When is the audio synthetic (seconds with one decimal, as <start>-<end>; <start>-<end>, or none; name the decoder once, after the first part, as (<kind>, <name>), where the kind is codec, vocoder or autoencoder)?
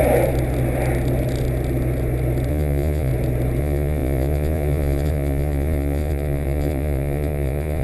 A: 2.5-3.1 (vocoder, Vocos); 3.6-7.8